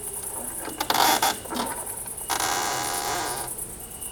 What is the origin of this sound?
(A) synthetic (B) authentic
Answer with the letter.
B